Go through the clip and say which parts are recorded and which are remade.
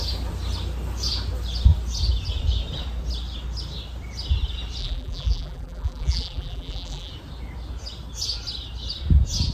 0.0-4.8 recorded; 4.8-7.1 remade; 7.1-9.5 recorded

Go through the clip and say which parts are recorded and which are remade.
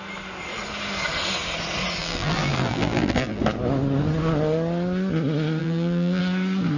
0.0-2.0 recorded; 2.0-3.4 remade; 3.4-5.6 recorded; 5.6-6.2 remade; 6.2-6.8 recorded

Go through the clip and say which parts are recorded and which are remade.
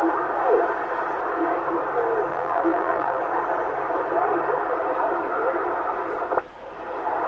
0.0-2.3 recorded; 2.3-3.2 remade; 3.2-7.3 recorded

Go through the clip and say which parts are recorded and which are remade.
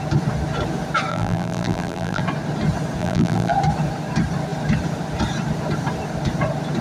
0.0-1.1 recorded; 1.1-2.2 remade; 2.2-3.0 recorded; 3.0-3.5 remade; 3.5-6.8 recorded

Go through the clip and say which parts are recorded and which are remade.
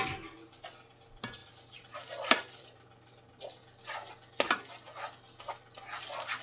0.0-1.4 recorded; 1.4-3.4 remade; 3.4-6.4 recorded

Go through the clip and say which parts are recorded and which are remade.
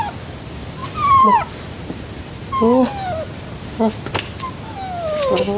0.0-0.8 recorded; 0.8-2.2 remade; 2.2-5.6 recorded